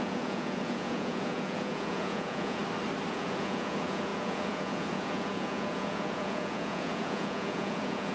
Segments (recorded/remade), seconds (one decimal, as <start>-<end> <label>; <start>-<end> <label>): 0.0-2.6 remade; 2.6-3.1 recorded; 3.1-8.1 remade